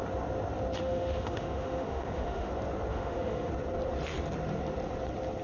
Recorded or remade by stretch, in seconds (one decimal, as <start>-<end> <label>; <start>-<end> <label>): 0.0-0.8 recorded; 0.8-2.5 remade; 2.5-2.9 recorded; 2.9-3.5 remade; 3.5-5.4 recorded